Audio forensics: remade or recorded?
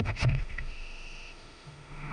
remade